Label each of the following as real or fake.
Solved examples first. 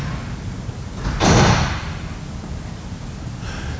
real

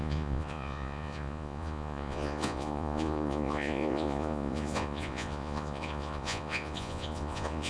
fake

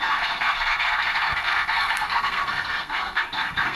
fake